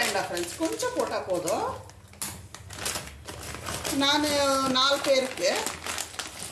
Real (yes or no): yes